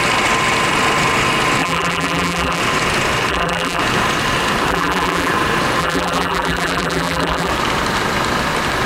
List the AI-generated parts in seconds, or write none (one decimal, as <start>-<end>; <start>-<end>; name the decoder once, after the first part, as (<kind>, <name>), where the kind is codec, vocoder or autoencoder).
1.6-2.6 (vocoder, BigVGAN v2); 3.3-3.8; 4.7-5.3; 5.8-7.5